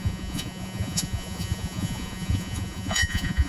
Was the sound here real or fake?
fake